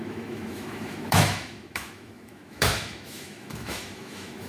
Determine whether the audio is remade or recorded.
remade